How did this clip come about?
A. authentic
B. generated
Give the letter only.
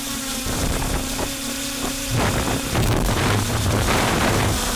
B